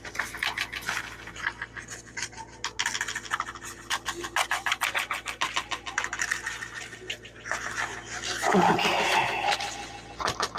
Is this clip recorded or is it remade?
recorded